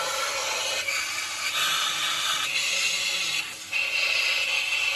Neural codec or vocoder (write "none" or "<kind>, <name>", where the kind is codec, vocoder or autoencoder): none